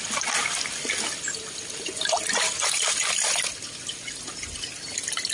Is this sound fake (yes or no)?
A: no